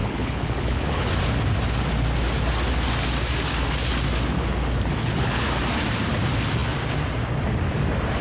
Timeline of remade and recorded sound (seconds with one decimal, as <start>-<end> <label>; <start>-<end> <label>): 0.0-1.1 remade; 1.1-5.0 recorded; 5.0-5.5 remade; 5.5-8.2 recorded